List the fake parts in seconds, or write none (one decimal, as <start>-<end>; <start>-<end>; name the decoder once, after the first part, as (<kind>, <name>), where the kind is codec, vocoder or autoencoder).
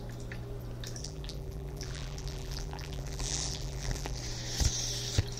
1.0-4.2 (vocoder, BigVGAN v2)